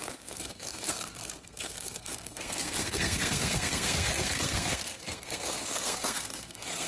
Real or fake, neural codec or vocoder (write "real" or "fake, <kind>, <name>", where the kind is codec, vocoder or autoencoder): fake, codec, SNAC